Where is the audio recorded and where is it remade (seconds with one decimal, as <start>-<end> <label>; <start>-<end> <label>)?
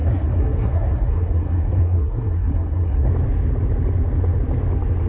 0.0-3.1 remade; 3.1-5.1 recorded